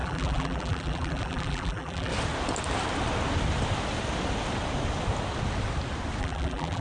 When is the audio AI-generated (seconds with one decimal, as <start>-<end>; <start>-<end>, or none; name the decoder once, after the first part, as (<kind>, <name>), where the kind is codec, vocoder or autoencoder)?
0.0-2.1 (vocoder, BigVGAN v2); 6.2-6.8